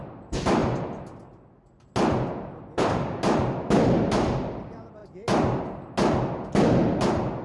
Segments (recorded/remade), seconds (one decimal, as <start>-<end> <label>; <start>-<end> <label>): 0.0-7.4 recorded